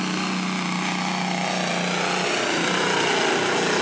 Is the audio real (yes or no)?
yes